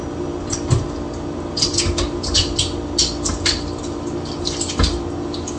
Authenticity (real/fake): real